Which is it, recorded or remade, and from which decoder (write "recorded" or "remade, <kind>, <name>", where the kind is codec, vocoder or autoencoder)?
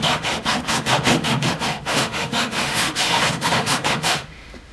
remade, autoencoder, DAC-VAE